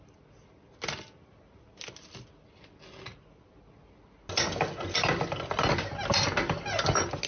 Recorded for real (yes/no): yes